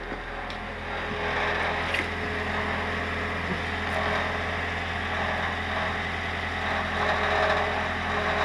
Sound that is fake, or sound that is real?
real